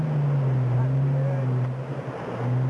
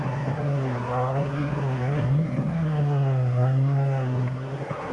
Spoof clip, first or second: second